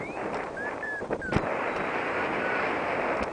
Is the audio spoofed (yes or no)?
yes